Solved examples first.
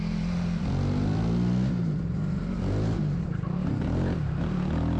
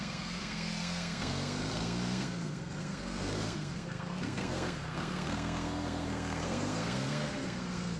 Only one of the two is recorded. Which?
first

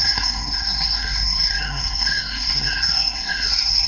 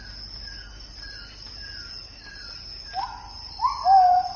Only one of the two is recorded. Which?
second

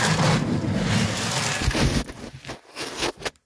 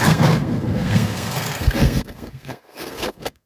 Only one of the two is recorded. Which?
first